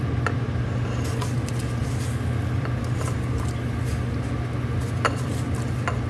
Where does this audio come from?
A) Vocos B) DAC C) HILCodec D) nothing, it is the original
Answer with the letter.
D